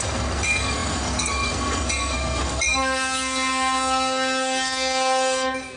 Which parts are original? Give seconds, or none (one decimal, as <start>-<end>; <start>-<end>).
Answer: none